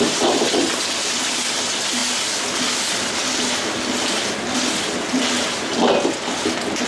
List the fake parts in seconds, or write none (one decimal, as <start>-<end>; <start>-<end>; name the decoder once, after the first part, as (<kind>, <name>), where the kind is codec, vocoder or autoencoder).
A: none